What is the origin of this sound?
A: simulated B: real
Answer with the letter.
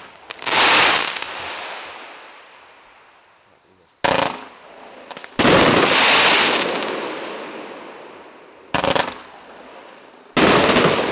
B